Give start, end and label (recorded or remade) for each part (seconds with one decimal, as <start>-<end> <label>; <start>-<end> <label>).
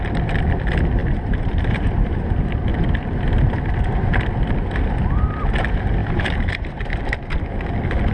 0.0-1.0 recorded; 1.0-2.2 remade; 2.2-6.0 recorded; 6.0-7.0 remade; 7.0-8.1 recorded